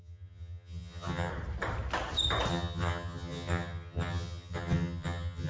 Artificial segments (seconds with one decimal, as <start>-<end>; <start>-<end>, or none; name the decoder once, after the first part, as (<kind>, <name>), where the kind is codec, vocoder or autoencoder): 0.0-1.3 (vocoder, HiFi-GAN); 2.5-5.5